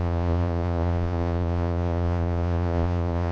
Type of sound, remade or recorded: remade